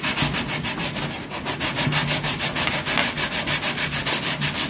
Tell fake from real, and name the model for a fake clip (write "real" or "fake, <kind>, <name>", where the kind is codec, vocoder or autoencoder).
real